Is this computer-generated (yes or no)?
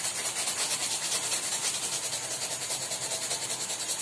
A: no